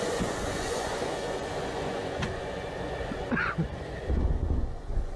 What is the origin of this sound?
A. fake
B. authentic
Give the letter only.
A